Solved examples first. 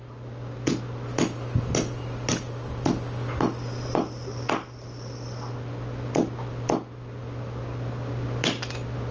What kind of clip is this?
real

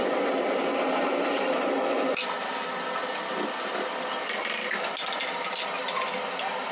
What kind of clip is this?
real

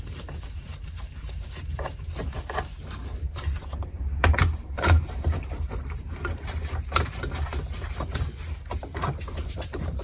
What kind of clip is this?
fake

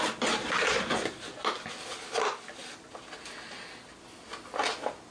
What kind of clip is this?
real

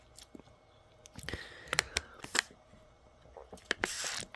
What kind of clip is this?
real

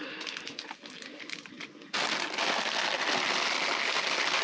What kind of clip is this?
real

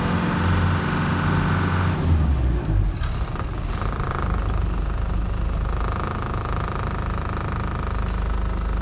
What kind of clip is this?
real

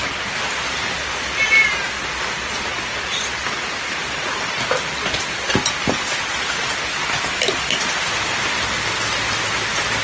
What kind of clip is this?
real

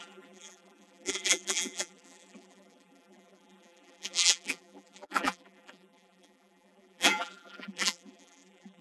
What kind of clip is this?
fake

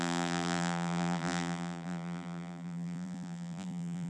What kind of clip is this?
fake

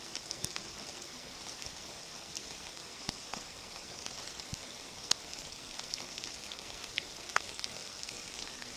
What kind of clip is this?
fake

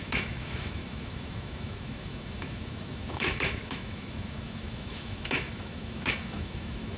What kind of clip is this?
fake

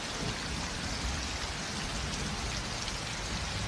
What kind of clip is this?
real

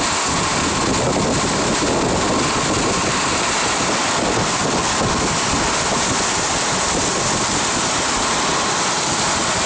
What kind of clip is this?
real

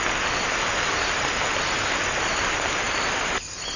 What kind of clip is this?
real